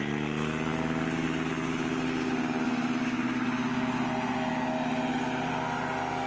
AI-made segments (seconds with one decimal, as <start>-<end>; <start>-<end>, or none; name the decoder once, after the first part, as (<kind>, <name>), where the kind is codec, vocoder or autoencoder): none